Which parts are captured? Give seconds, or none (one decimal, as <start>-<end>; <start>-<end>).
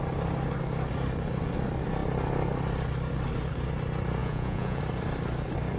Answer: 0.0-4.2; 4.8-5.8